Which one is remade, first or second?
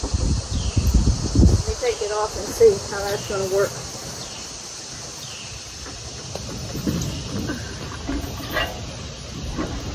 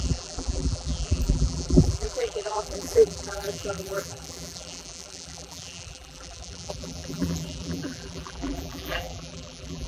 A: second